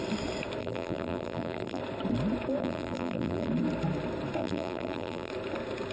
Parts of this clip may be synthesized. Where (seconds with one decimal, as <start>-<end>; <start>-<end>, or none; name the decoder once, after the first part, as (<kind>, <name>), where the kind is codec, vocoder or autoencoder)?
0.6-1.8 (vocoder, BigVGAN v2); 2.6-3.5; 4.4-5.3